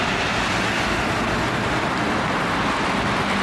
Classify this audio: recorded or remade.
recorded